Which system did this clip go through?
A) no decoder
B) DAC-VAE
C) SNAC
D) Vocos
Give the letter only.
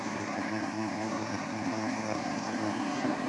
C